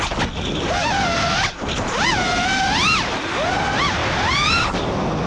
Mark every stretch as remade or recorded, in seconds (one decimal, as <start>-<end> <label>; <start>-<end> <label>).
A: 0.0-5.3 recorded

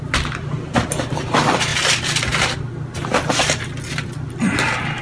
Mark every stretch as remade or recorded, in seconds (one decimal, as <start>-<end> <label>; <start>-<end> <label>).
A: 0.0-5.0 recorded

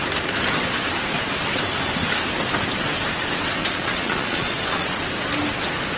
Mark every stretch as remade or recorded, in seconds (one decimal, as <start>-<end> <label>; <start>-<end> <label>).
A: 0.0-3.6 recorded; 3.6-5.0 remade; 5.0-6.0 recorded